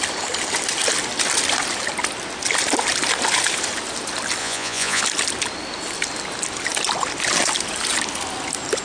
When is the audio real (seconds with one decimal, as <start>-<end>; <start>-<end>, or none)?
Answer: 0.0-4.4; 5.0-8.8